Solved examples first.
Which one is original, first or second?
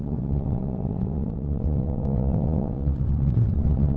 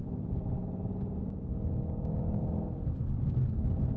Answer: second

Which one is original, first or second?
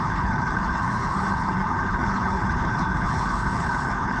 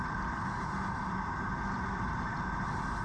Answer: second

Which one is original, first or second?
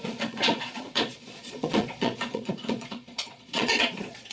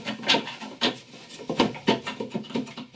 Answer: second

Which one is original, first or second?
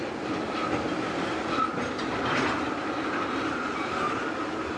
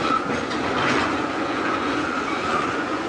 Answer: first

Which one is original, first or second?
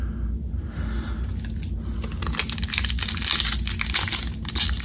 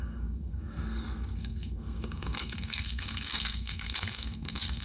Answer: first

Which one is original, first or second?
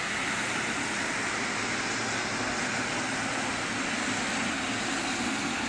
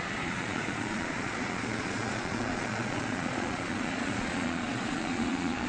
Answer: first